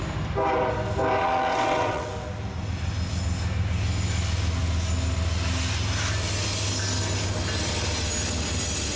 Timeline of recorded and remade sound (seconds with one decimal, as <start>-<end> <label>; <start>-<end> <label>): 0.0-1.2 recorded; 1.2-2.1 remade; 2.1-9.0 recorded